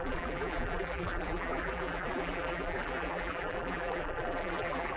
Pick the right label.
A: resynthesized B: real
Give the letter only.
A